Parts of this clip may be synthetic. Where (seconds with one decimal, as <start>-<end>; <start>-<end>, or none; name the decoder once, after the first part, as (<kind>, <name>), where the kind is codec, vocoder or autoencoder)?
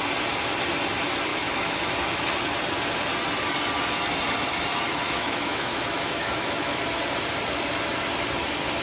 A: 1.3-1.9 (autoencoder, DAC-VAE); 4.9-6.8